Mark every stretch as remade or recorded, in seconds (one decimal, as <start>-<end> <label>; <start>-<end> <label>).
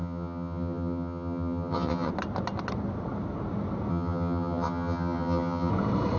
0.0-2.1 remade; 2.1-3.9 recorded; 3.9-5.7 remade; 5.7-6.2 recorded